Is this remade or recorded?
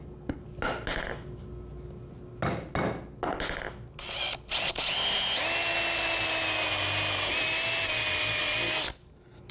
recorded